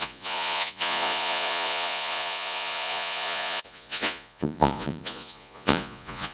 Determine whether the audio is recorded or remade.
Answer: remade